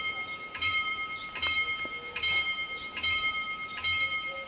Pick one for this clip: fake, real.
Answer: fake